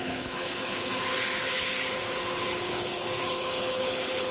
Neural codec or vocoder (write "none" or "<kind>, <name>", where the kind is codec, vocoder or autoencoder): codec, HILCodec